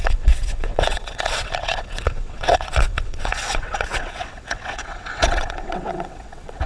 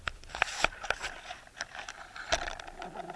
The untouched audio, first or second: second